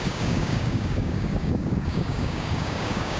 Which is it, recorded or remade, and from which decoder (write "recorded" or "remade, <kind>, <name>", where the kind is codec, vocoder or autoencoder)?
remade, codec, DAC